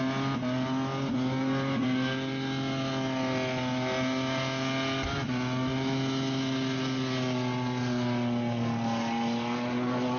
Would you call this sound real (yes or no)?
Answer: yes